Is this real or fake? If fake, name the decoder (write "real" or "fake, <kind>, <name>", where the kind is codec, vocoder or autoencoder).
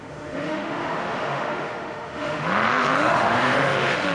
fake, autoencoder, DAC-VAE